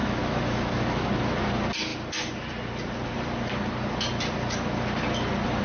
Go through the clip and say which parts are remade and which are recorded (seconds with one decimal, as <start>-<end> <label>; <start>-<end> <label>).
0.0-1.1 remade; 1.1-5.6 recorded